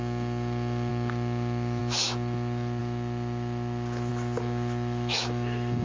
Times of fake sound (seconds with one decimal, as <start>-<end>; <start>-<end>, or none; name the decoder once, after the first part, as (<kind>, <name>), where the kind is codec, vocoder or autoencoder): 0.0-5.8 (autoencoder, DAC-VAE)